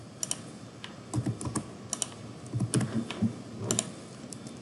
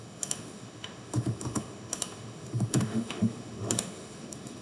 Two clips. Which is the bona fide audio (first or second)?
first